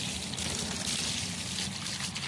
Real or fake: real